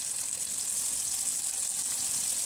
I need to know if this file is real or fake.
real